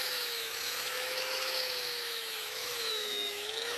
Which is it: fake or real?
fake